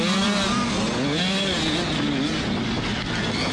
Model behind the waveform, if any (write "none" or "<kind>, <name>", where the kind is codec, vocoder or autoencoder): none